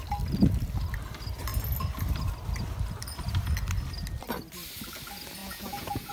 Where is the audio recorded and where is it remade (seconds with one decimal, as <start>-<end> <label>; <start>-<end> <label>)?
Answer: 0.0-5.4 recorded; 5.4-6.1 remade